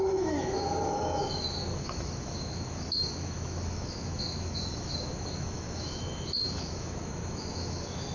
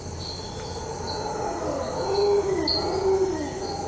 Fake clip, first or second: first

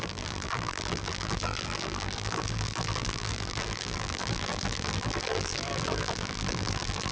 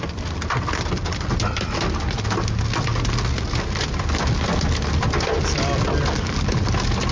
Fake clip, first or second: first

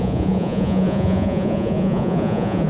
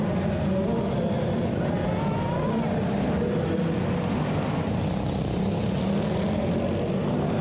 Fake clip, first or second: first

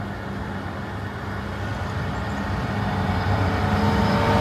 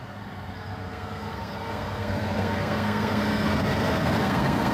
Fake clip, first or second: second